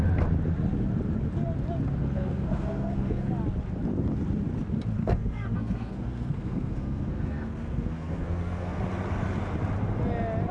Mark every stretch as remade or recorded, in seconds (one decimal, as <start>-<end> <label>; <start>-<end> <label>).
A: 0.0-2.0 recorded; 2.0-3.3 remade; 3.3-5.0 recorded; 5.0-8.8 remade; 8.8-10.5 recorded